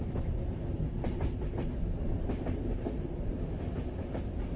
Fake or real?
real